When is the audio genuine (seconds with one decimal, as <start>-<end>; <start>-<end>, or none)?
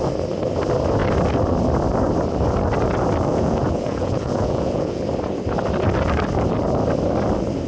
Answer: 0.0-3.3; 5.0-7.7